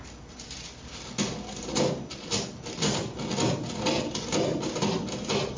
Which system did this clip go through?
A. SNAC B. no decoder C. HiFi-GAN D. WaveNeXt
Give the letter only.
B